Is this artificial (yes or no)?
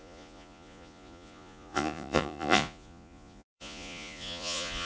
yes